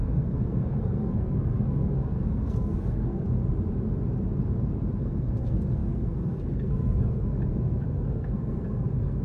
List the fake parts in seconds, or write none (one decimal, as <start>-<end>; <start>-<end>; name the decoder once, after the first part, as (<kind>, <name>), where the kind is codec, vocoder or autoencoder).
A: 0.0-3.4 (codec, SNAC); 5.0-9.2